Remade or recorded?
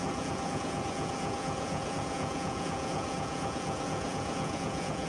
remade